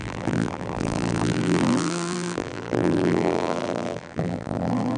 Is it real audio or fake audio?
fake